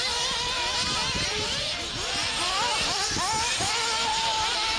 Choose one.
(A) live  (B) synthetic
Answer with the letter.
A